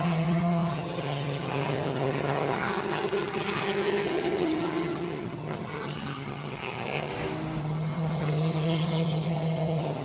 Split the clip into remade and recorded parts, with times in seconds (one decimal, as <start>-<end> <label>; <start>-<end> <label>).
0.0-7.1 remade; 7.1-7.6 recorded; 7.6-10.0 remade